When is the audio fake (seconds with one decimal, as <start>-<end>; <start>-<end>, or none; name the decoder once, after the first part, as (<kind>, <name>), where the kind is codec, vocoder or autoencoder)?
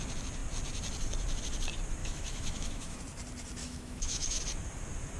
2.0-3.0 (autoencoder, DAC-VAE); 3.6-4.4